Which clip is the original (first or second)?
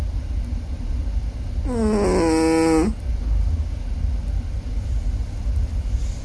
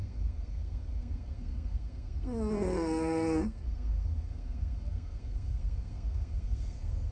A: first